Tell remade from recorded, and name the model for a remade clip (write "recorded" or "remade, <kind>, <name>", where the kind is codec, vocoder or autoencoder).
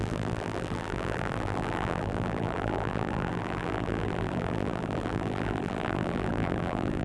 remade, vocoder, BigVGAN v2